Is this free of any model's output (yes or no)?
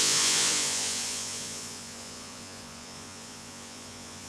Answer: no